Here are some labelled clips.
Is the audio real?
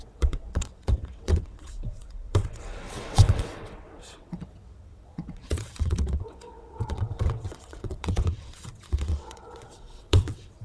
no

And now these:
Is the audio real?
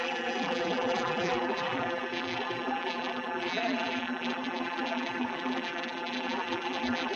no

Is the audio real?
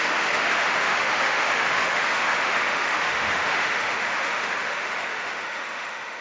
no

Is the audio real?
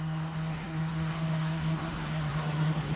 no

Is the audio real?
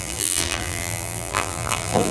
no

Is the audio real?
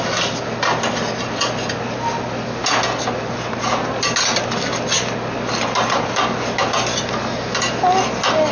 yes